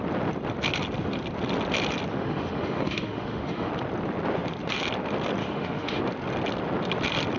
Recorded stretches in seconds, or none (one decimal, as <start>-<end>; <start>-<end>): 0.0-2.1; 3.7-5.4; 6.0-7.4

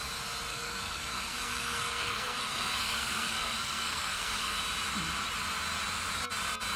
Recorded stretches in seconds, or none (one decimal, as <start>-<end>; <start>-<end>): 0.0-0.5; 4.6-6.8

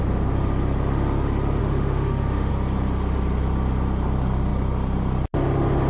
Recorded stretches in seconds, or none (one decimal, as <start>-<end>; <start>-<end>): 0.0-1.6; 2.5-5.9

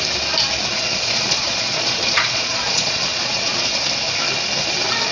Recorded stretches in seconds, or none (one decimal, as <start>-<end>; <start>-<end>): 0.0-0.7; 3.8-5.1